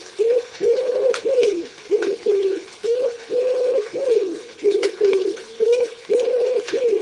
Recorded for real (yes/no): no